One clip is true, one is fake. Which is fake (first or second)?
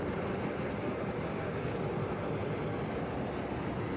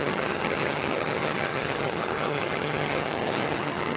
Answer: second